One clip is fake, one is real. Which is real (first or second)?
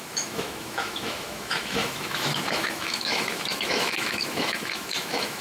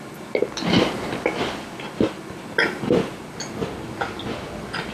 second